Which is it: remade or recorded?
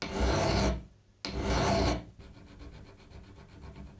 recorded